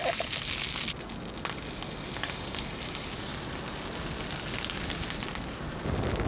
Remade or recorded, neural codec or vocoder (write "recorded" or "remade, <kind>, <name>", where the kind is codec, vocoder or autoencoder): recorded